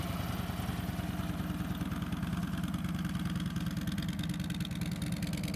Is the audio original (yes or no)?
yes